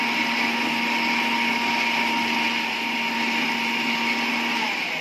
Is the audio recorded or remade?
recorded